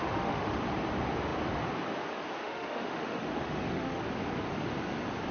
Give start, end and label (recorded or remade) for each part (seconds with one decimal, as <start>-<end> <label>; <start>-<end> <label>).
0.0-0.6 remade; 0.6-2.4 recorded; 2.4-4.0 remade; 4.0-5.3 recorded